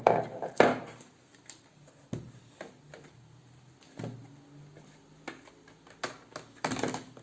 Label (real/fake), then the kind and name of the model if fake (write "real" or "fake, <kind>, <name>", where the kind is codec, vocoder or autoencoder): real